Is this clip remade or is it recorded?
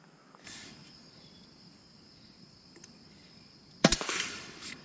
recorded